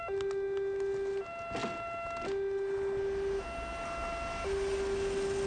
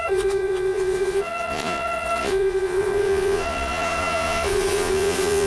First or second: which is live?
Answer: first